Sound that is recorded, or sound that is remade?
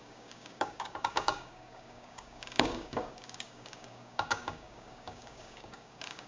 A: remade